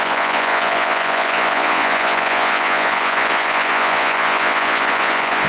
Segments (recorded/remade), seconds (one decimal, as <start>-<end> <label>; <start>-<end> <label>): 0.0-5.5 remade